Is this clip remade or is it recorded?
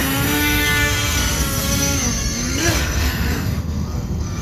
remade